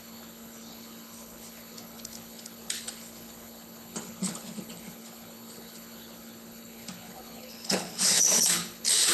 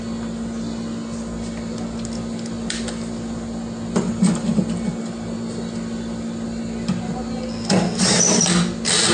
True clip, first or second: second